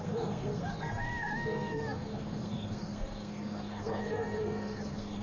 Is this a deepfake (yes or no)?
yes